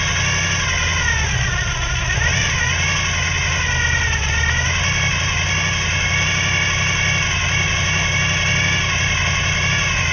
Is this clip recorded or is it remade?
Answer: recorded